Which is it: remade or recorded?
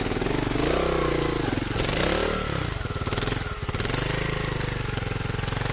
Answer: recorded